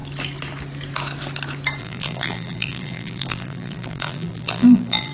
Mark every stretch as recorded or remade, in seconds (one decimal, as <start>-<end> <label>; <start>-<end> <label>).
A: 0.0-1.8 recorded; 1.8-5.1 remade